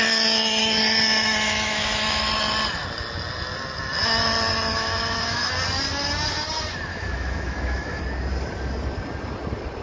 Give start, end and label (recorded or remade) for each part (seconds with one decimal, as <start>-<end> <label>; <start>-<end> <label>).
0.0-0.6 recorded; 0.6-2.3 remade; 2.3-4.7 recorded; 4.7-5.5 remade; 5.5-6.9 recorded; 6.9-8.0 remade; 8.0-9.8 recorded

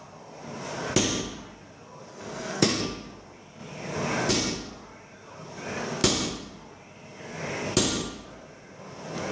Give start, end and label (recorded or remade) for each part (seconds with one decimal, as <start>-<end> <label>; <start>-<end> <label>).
0.0-2.1 recorded; 2.1-2.8 remade; 2.8-9.3 recorded

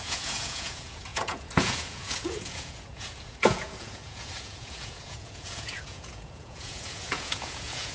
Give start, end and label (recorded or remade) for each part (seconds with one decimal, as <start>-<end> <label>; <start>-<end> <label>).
0.0-7.9 remade

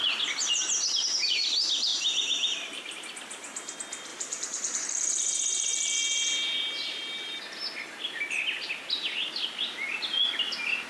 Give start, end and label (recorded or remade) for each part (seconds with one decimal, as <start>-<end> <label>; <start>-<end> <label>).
0.0-1.9 recorded; 1.9-3.0 remade; 3.0-4.1 recorded; 4.1-7.4 remade; 7.4-10.9 recorded

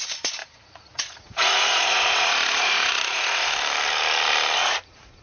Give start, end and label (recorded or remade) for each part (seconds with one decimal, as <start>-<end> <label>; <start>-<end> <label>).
0.0-0.4 recorded; 0.4-3.5 remade; 3.5-5.2 recorded

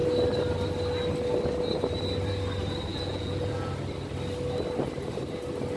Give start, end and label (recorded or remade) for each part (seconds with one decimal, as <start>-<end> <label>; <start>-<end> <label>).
0.0-2.9 recorded; 2.9-3.7 remade; 3.7-5.8 recorded

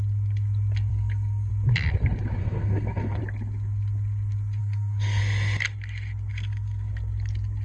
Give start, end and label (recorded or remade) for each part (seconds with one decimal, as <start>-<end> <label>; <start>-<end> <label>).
0.0-0.9 recorded; 0.9-1.5 remade; 1.5-2.4 recorded; 2.4-3.2 remade; 3.2-4.6 recorded; 4.6-5.2 remade; 5.2-6.3 recorded; 6.3-6.9 remade; 6.9-7.6 recorded

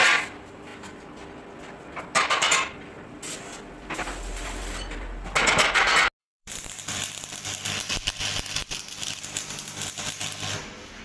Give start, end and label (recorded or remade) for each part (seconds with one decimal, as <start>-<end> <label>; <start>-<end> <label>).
0.0-6.2 recorded; 6.2-10.0 remade; 10.0-11.0 recorded